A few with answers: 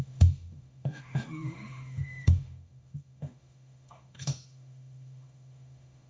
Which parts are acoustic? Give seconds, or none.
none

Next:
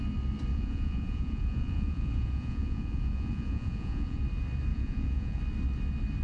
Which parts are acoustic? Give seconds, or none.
0.0-0.5; 4.2-4.7; 5.4-6.2

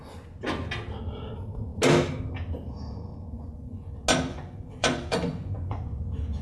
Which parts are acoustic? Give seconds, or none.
0.0-3.1; 3.9-4.3; 5.8-6.4

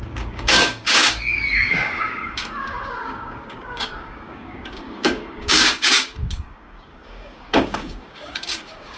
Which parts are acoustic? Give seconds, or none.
none

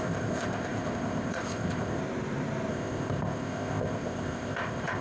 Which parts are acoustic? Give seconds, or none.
2.0-2.7

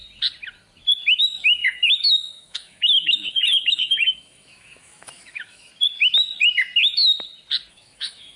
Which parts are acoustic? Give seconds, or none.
0.0-1.2; 5.7-7.7

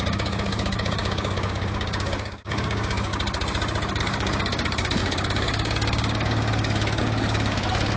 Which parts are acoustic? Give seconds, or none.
3.1-4.0